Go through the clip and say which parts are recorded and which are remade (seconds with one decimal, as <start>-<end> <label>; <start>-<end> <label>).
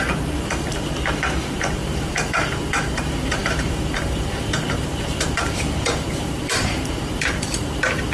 0.0-0.7 remade; 0.7-1.4 recorded; 1.4-8.1 remade